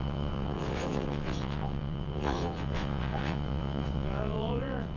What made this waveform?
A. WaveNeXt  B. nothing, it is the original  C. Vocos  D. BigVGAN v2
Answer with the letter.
A